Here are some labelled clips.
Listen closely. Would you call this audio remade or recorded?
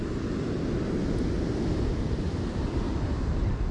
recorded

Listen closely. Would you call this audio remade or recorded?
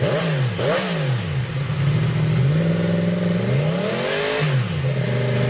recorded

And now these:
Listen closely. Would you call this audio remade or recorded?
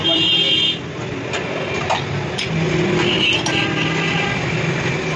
recorded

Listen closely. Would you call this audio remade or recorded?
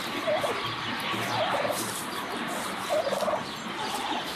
recorded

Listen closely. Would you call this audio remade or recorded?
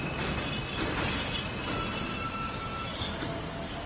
recorded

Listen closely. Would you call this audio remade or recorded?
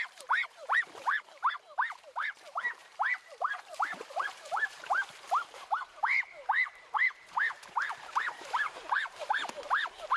remade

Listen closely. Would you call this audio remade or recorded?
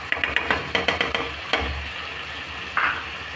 recorded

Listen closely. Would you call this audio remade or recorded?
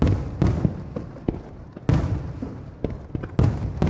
recorded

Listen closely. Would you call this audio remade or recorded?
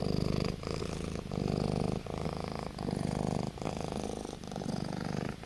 recorded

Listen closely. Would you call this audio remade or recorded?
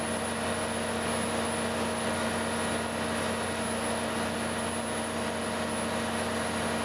recorded